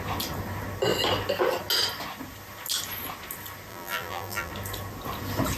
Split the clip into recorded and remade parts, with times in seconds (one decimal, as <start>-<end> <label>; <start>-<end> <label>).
0.0-3.7 recorded; 3.7-4.5 remade; 4.5-5.6 recorded